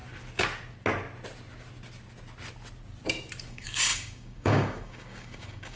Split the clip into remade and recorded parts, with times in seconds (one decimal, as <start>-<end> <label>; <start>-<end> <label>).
0.0-3.5 recorded; 3.5-5.8 remade